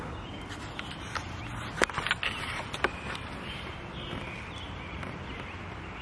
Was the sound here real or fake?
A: real